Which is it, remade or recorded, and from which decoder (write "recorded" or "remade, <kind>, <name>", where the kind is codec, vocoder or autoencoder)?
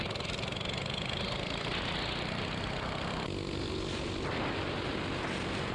recorded